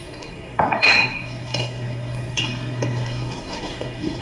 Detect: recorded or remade remade